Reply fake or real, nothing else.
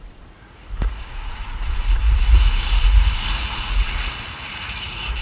fake